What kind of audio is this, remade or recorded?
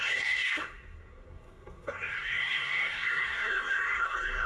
remade